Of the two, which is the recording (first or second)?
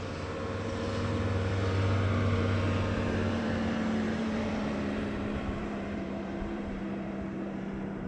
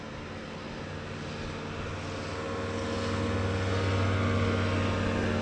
second